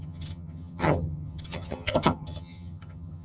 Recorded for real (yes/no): no